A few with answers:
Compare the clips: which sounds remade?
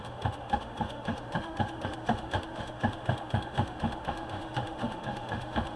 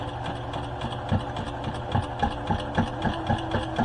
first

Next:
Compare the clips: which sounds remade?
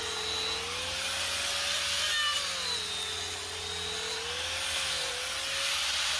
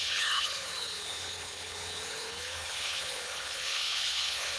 second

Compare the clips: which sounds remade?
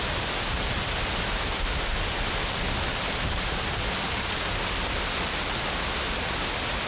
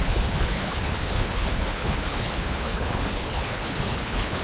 second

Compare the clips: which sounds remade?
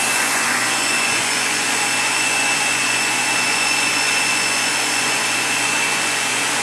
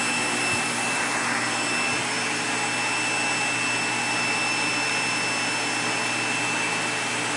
first